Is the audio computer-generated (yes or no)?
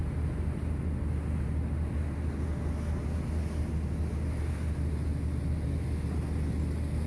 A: no